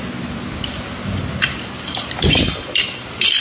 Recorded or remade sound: remade